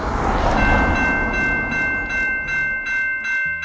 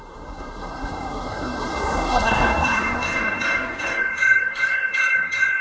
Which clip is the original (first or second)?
first